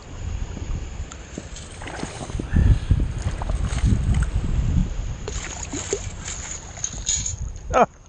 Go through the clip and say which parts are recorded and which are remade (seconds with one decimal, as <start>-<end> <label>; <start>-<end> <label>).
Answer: 0.0-2.1 remade; 2.1-2.6 recorded; 2.6-3.5 remade; 3.5-4.8 recorded; 4.8-5.3 remade; 5.3-8.1 recorded